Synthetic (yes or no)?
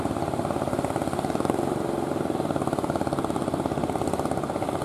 no